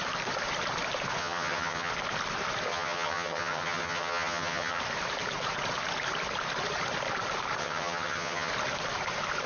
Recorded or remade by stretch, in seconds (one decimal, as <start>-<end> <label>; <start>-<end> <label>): 0.0-1.2 recorded; 1.2-1.9 remade; 1.9-2.7 recorded; 2.7-4.8 remade; 4.8-7.6 recorded; 7.6-8.5 remade; 8.5-9.5 recorded

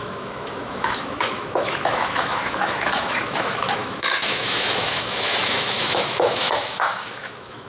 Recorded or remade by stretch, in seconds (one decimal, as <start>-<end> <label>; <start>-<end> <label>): 0.0-7.7 remade

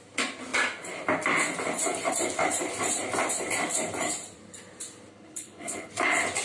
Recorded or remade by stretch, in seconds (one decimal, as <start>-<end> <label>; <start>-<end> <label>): 0.0-5.1 recorded; 5.1-5.9 remade; 5.9-6.4 recorded

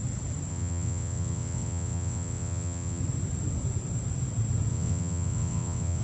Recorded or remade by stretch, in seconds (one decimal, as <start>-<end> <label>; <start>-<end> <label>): 0.0-0.5 recorded; 0.5-3.0 remade; 3.0-4.7 recorded; 4.7-6.0 remade